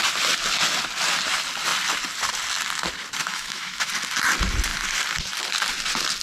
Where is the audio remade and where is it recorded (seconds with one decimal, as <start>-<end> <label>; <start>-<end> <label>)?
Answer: 0.0-3.2 recorded; 3.2-3.9 remade; 3.9-6.2 recorded